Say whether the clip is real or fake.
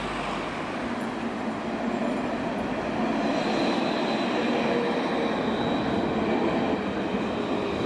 real